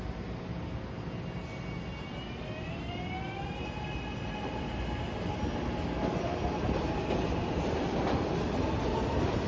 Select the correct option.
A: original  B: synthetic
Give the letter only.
A